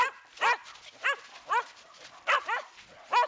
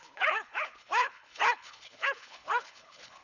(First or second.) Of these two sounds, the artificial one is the second